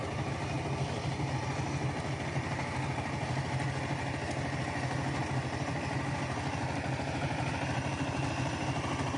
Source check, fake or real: real